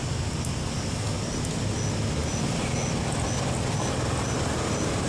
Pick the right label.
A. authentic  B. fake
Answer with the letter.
A